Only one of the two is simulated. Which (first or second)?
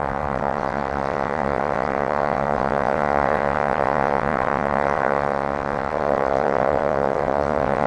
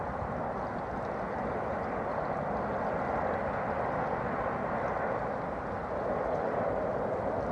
first